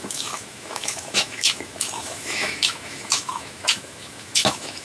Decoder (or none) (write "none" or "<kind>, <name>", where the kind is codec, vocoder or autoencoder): autoencoder, DAC-VAE